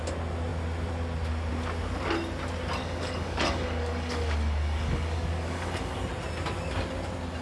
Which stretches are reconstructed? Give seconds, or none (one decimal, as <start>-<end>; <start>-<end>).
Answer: 2.8-6.0